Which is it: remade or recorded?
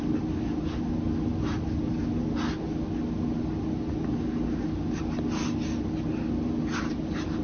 recorded